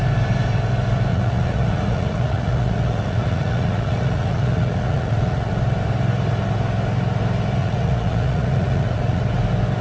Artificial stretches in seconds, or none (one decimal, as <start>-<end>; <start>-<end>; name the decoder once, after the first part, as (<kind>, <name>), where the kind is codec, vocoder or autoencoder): 1.1-5.5 (vocoder, Vocos); 7.6-9.2

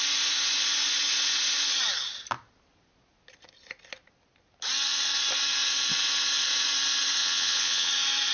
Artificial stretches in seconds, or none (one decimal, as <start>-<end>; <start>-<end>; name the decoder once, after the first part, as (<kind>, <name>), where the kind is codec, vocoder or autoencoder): 7.2-7.9 (vocoder, WaveNeXt)